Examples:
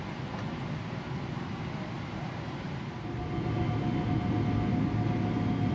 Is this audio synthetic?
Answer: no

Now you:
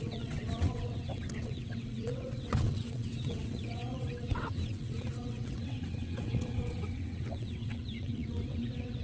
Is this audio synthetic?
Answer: yes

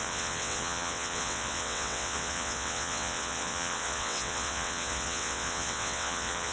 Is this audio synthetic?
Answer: yes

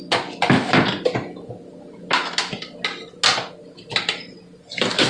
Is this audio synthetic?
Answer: no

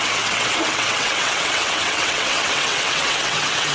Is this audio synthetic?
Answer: yes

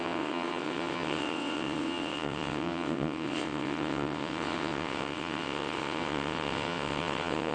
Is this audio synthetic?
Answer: yes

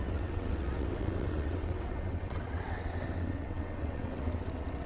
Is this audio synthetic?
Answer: yes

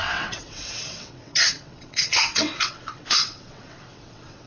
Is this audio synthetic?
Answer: yes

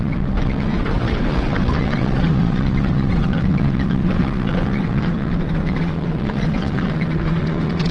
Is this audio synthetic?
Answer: yes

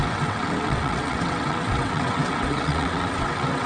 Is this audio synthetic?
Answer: yes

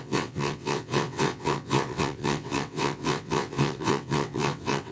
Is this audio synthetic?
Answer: yes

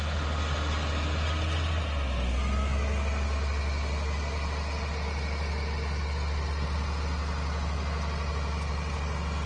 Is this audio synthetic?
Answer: no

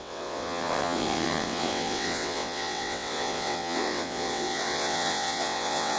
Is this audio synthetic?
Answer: yes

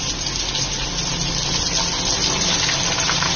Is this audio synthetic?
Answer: no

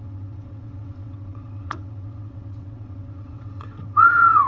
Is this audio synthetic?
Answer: yes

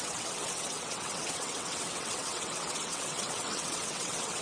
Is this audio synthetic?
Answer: yes